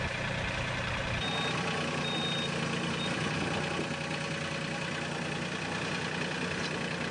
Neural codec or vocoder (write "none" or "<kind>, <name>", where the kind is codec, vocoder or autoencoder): none